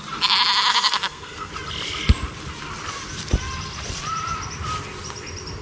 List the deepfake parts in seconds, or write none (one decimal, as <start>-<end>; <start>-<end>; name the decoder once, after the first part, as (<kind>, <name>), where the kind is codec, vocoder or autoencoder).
0.7-1.5 (codec, SNAC)